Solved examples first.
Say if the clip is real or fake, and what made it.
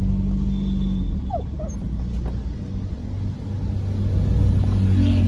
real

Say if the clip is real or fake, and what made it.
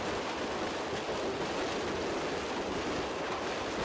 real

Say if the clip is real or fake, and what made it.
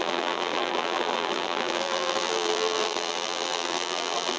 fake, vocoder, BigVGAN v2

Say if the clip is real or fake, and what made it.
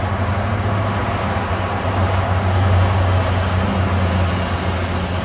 real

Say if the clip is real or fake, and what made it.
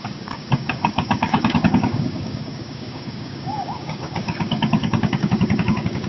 fake, codec, DAC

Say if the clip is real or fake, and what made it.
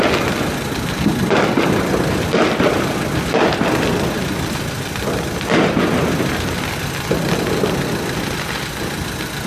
real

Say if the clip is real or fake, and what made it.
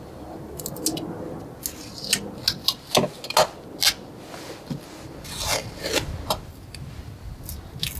real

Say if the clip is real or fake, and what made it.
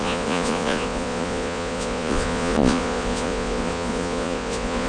fake, vocoder, Vocos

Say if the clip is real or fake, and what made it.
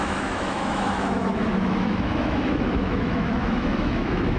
fake, autoencoder, DAC-VAE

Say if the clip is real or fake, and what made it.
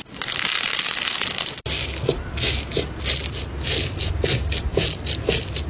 real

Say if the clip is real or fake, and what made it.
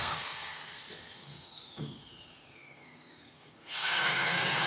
fake, codec, SNAC